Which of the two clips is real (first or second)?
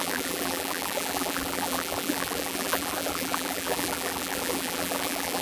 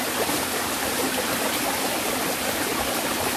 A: second